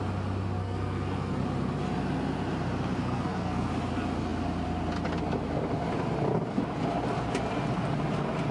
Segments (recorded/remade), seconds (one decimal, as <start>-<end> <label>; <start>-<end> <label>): 0.0-0.6 recorded; 0.6-1.4 remade; 1.4-3.0 recorded; 3.0-3.7 remade; 3.7-8.5 recorded